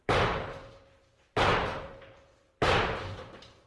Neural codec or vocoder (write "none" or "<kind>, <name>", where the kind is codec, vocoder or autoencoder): vocoder, BigVGAN v2